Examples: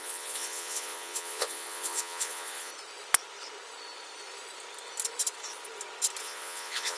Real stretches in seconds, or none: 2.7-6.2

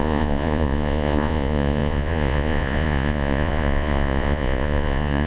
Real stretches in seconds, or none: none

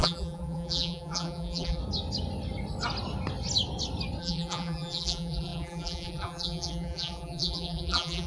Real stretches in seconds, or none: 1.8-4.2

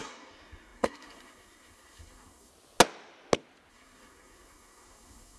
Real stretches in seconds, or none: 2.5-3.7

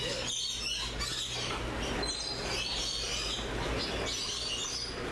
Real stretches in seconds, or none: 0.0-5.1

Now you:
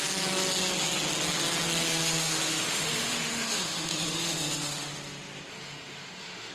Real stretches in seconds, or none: 0.0-1.9; 4.9-5.5